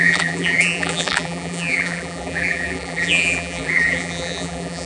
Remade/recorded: remade